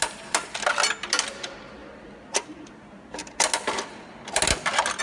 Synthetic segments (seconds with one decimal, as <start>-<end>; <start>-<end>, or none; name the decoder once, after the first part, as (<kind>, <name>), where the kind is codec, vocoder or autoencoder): none